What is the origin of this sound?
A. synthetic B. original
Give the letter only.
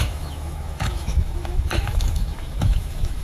A